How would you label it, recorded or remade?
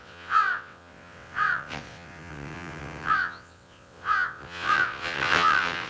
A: remade